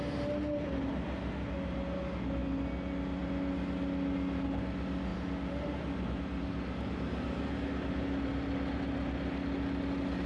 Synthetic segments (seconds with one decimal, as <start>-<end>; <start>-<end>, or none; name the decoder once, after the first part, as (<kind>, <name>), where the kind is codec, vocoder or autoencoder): none